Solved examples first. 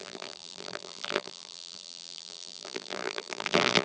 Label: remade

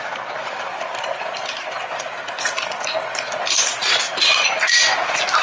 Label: recorded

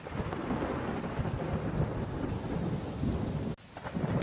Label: recorded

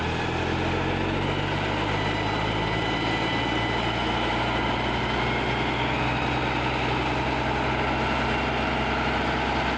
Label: recorded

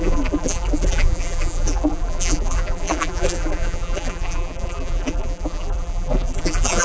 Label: remade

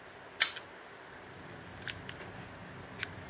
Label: recorded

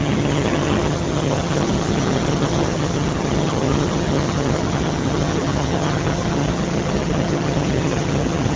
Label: remade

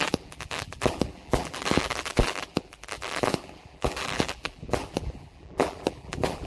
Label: remade